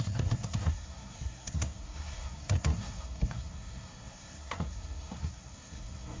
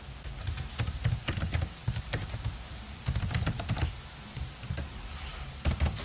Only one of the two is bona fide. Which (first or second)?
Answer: second